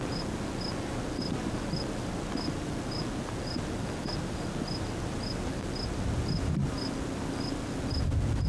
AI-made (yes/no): no